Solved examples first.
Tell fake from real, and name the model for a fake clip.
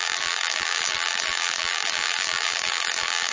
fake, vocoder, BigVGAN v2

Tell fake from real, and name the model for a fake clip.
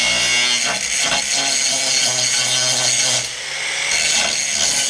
real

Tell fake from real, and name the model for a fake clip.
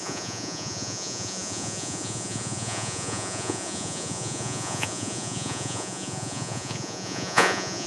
fake, vocoder, Vocos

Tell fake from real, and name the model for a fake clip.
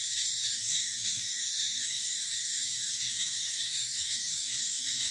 fake, codec, DAC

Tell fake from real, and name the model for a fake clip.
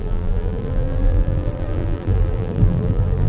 fake, vocoder, BigVGAN v2